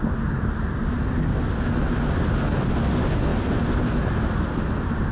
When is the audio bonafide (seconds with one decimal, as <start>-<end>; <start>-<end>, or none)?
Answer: 0.0-3.3; 3.9-5.1